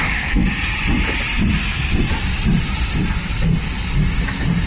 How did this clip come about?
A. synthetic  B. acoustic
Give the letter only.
B